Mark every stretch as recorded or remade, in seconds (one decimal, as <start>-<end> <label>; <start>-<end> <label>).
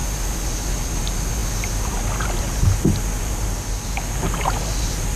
0.0-5.2 recorded